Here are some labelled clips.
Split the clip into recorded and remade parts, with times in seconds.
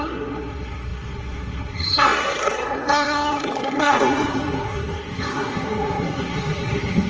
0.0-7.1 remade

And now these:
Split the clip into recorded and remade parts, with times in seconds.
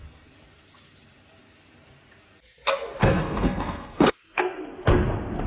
0.0-3.0 recorded; 3.0-4.4 remade; 4.4-5.5 recorded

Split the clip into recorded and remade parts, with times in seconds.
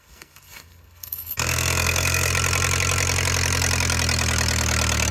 0.0-2.3 remade; 2.3-5.1 recorded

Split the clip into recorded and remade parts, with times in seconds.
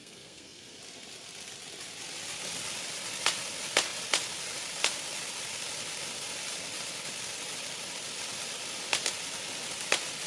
0.0-0.8 remade; 0.8-10.3 recorded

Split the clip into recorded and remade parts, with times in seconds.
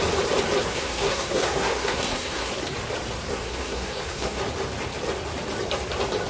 0.0-0.7 recorded; 0.7-2.5 remade; 2.5-3.3 recorded; 3.3-4.4 remade; 4.4-6.3 recorded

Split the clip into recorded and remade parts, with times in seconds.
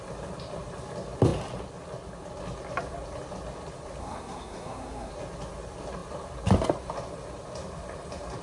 0.0-4.0 recorded; 4.0-5.1 remade; 5.1-8.4 recorded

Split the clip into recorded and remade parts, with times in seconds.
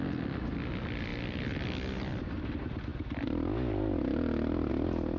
0.0-5.2 recorded